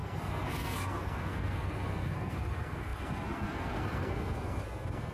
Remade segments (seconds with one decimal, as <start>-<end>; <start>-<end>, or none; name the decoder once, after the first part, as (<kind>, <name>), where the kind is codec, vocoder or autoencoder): 0.0-5.1 (codec, SNAC)